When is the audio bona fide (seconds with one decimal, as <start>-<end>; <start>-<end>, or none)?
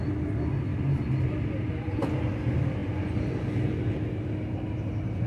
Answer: 0.0-0.7; 1.9-5.3